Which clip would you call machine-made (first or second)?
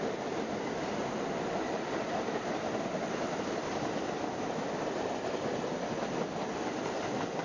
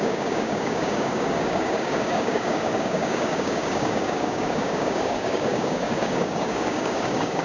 second